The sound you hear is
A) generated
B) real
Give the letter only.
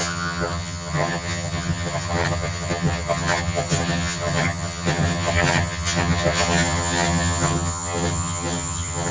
A